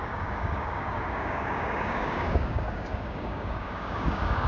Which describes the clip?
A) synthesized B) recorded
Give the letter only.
A